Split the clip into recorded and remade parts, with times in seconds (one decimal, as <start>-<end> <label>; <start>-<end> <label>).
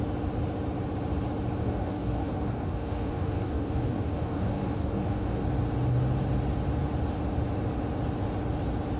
0.0-1.6 recorded; 1.6-5.4 remade; 5.4-9.0 recorded